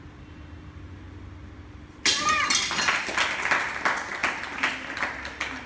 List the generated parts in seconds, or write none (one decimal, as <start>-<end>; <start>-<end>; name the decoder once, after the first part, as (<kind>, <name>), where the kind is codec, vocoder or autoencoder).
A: 4.2-4.7 (vocoder, BigVGAN v2)